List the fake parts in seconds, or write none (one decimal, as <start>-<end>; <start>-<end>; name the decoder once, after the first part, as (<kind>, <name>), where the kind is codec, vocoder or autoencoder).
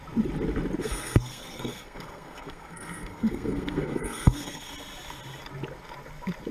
0.8-4.7 (codec, SNAC)